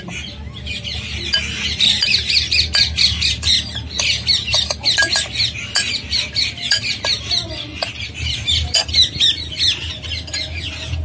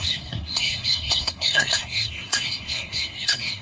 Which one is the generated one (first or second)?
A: second